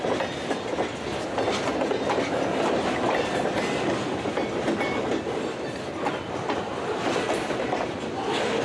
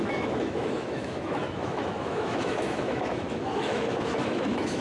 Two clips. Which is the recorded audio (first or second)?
first